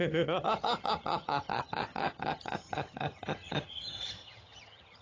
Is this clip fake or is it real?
fake